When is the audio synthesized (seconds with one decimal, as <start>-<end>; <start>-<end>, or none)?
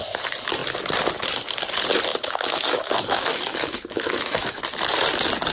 2.1-4.6